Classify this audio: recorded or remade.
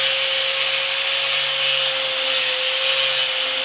recorded